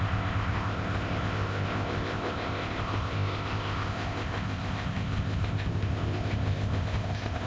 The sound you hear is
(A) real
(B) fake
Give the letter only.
B